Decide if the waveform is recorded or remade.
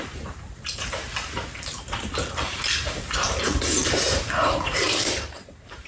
remade